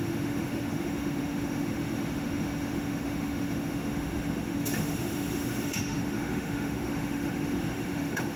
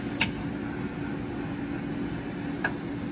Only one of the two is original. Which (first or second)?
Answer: second